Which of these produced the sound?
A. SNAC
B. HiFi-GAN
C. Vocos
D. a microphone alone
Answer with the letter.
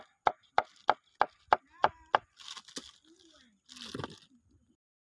D